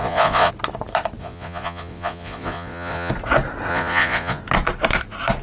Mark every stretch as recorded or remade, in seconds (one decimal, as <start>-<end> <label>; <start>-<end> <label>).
0.0-0.5 remade; 0.5-1.2 recorded; 1.2-3.1 remade; 3.1-3.7 recorded; 3.7-4.4 remade; 4.4-5.4 recorded